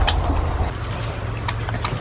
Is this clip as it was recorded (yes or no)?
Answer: yes